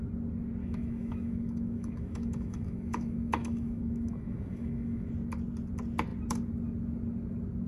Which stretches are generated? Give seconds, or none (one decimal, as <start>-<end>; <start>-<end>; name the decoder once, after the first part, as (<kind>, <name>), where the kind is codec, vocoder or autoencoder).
0.6-5.1 (autoencoder, DAC-VAE)